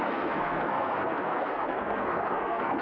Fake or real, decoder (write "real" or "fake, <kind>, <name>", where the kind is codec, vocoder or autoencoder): fake, codec, SNAC